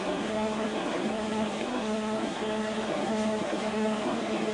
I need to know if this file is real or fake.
fake